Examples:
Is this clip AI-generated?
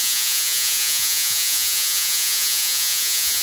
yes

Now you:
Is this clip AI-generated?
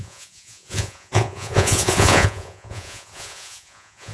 yes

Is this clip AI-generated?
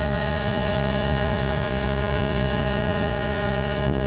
yes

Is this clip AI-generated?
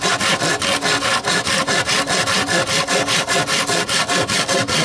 no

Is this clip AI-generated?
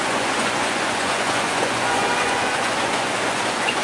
yes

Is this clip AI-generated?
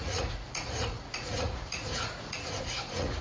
yes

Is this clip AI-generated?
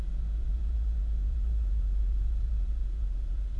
yes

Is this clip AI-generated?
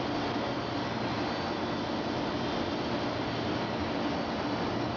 no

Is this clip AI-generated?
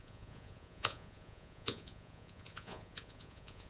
yes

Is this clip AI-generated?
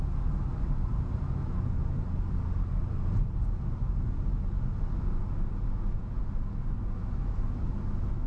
no